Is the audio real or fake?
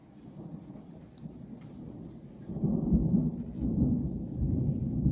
real